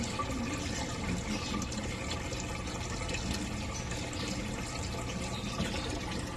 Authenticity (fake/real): real